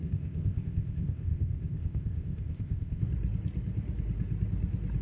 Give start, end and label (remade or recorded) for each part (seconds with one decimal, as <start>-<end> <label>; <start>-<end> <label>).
0.0-3.0 remade; 3.0-5.0 recorded